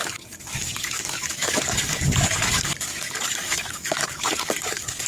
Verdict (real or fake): fake